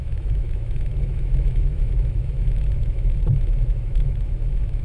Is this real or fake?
fake